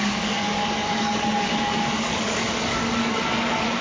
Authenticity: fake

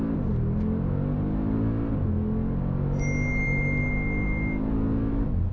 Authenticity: real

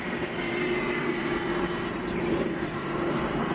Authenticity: fake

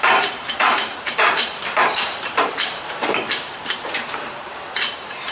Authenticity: fake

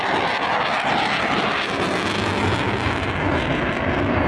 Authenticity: real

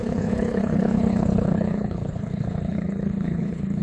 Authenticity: fake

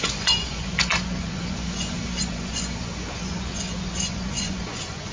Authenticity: fake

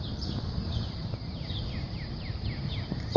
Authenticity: fake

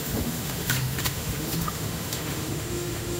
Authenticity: fake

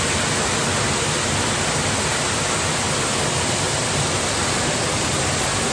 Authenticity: real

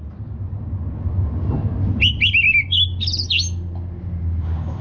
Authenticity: real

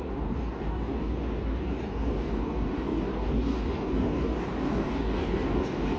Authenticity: fake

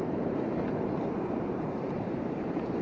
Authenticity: fake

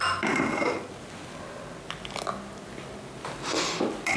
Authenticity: real